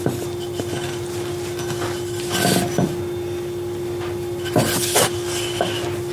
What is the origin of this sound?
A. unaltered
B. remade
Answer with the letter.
A